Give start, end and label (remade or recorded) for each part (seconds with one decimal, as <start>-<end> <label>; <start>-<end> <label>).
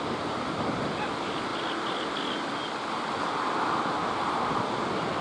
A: 0.0-5.2 recorded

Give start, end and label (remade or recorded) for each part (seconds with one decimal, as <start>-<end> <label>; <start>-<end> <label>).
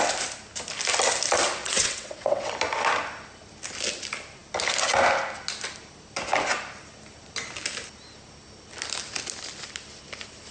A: 0.0-1.6 recorded; 1.6-2.5 remade; 2.5-10.5 recorded